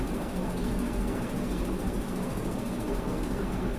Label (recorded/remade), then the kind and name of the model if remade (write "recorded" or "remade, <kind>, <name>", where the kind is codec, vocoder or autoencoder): remade, codec, SNAC